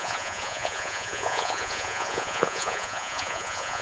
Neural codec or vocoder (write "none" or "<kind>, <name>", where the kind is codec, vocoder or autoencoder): vocoder, Vocos